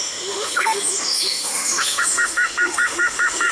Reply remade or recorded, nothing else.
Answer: remade